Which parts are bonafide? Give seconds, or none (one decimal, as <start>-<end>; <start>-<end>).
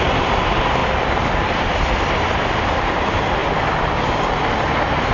3.4-5.1